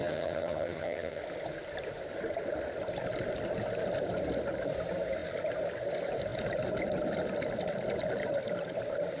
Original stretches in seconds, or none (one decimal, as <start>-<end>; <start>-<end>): 1.2-9.2